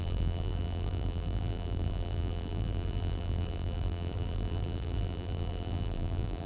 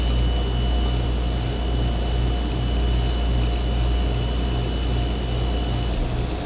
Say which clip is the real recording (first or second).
second